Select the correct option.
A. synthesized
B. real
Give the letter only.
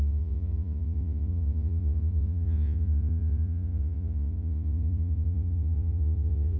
A